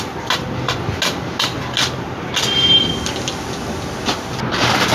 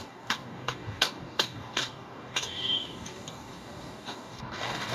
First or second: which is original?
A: first